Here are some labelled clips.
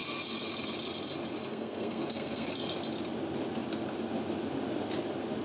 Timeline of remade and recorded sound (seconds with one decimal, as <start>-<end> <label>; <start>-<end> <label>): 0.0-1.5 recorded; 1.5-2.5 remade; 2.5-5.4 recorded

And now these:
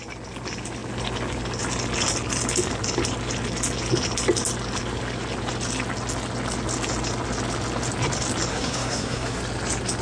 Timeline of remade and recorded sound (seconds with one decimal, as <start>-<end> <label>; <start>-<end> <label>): 0.0-8.5 recorded; 8.5-9.4 remade; 9.4-10.0 recorded

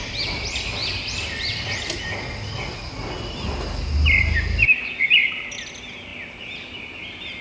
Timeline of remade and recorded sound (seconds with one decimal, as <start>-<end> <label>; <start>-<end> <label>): 0.0-7.4 recorded